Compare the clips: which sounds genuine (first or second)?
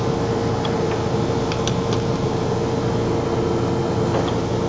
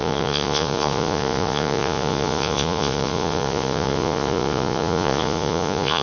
first